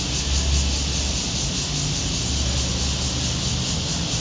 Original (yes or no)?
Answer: yes